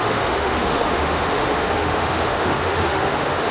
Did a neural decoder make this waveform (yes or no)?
yes